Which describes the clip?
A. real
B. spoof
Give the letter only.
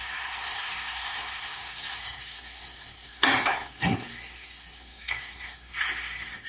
B